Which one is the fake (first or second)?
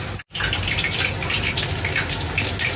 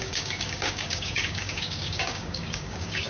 second